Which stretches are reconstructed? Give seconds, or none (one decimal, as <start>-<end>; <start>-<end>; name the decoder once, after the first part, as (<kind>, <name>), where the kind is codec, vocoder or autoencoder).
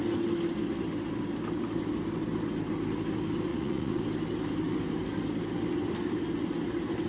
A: 3.5-4.0 (vocoder, Vocos)